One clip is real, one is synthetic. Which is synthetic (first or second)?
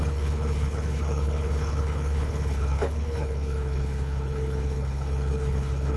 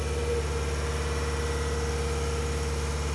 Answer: first